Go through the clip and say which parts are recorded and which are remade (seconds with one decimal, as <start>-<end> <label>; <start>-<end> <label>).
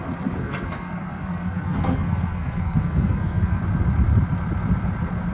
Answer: 0.0-0.4 recorded; 0.4-3.6 remade; 3.6-5.3 recorded